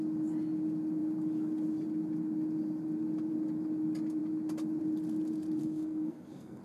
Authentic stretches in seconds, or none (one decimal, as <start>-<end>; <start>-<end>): 0.0-5.6